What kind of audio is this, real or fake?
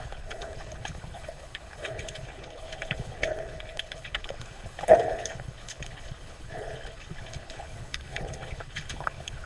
fake